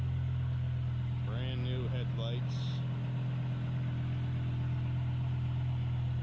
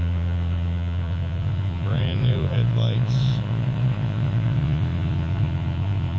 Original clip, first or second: first